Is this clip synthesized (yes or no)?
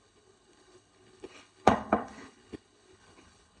yes